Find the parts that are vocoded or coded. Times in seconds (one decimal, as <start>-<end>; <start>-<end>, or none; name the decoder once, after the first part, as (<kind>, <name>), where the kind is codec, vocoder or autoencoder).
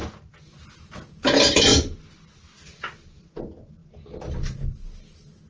0.0-0.7 (vocoder, BigVGAN v2); 1.7-2.6